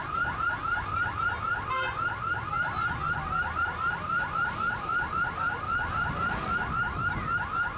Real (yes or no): yes